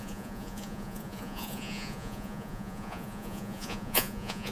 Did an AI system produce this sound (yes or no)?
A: yes